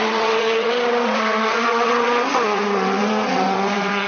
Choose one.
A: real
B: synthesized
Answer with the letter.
B